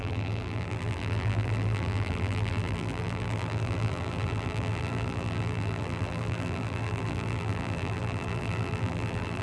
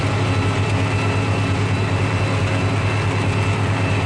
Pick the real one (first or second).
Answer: second